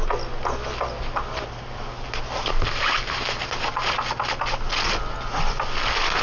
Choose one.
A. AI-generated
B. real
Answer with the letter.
B